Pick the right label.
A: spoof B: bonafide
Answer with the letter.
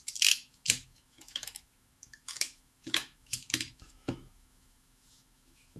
A